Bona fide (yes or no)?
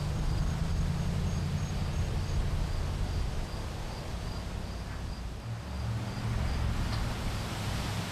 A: yes